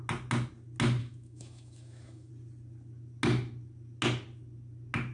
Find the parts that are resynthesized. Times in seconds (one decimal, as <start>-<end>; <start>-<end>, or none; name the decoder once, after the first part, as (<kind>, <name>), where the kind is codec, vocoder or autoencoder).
1.0-2.3 (autoencoder, DAC-VAE)